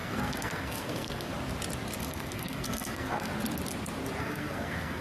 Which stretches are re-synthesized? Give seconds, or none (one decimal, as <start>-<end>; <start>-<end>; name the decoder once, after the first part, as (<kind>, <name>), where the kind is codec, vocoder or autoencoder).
0.0-1.3 (codec, SNAC); 2.0-3.3; 4.2-5.0